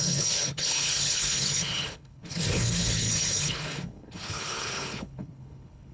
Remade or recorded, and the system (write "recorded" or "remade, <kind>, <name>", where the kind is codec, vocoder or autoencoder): remade, codec, HILCodec